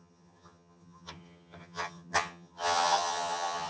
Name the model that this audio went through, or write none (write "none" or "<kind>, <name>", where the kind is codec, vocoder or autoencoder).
vocoder, HiFi-GAN